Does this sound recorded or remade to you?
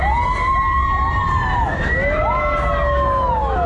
recorded